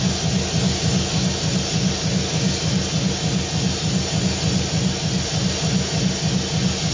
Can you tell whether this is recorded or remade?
recorded